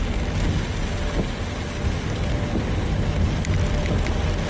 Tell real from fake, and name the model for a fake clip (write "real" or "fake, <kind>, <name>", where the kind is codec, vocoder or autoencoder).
real